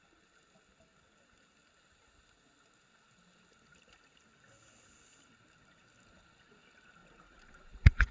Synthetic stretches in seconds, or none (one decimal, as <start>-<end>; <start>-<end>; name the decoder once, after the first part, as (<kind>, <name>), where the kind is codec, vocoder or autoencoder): 7.0-8.1 (vocoder, Vocos)